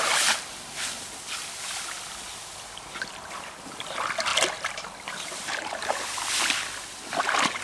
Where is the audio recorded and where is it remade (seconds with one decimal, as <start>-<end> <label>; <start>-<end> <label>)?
0.0-7.6 recorded